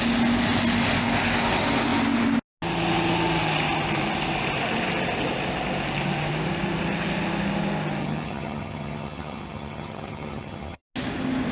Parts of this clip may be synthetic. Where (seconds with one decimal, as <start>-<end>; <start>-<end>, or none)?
8.0-10.8